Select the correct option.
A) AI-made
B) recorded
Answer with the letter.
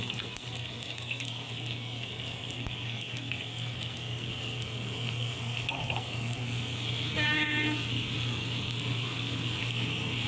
A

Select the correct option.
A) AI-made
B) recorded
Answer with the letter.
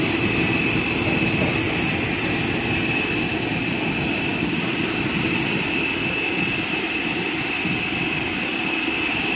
B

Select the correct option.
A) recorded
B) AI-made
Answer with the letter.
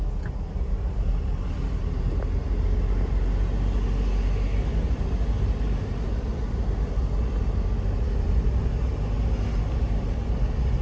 A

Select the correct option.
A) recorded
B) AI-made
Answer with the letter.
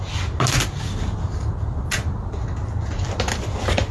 A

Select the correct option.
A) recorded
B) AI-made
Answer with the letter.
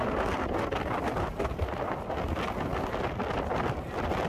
A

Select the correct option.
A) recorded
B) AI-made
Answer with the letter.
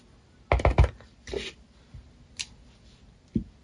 A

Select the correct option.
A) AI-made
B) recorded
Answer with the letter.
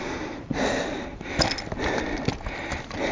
B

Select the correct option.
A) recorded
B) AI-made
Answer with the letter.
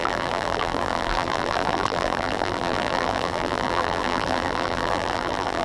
B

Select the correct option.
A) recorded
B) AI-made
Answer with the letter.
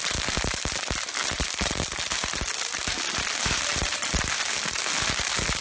A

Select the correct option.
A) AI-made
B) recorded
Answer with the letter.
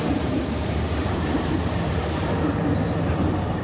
A